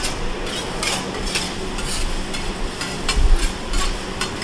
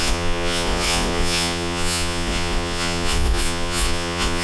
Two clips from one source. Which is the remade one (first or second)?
second